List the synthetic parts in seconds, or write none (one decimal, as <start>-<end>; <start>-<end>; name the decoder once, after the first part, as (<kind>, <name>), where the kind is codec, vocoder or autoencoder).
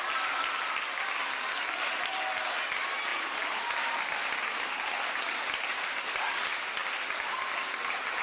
none